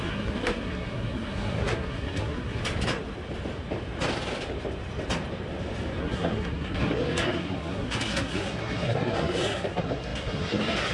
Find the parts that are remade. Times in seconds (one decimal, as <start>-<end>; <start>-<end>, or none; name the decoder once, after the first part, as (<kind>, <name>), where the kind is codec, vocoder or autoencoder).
0.0-2.6 (codec, SNAC); 6.0-10.9